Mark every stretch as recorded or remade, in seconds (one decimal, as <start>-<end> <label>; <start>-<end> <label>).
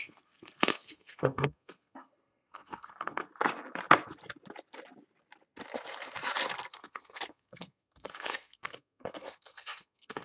0.0-3.3 remade; 3.3-6.7 recorded; 6.7-10.2 remade